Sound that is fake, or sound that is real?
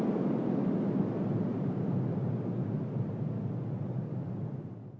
real